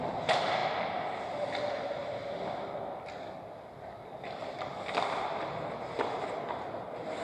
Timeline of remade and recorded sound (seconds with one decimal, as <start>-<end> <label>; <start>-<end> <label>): 0.0-7.2 recorded